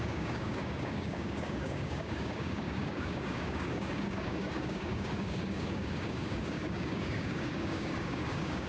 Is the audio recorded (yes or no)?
no